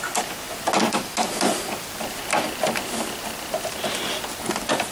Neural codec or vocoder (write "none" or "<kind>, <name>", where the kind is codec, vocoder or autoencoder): none